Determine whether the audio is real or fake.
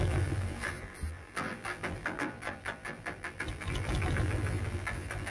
fake